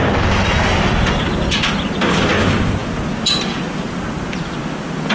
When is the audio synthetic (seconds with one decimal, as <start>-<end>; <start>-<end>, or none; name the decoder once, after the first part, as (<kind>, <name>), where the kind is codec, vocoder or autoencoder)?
none